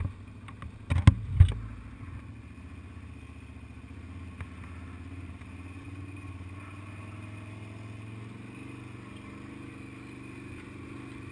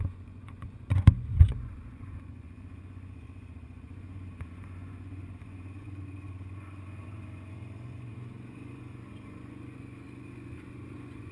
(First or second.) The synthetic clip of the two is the second